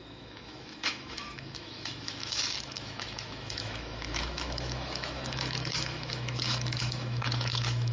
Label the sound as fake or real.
fake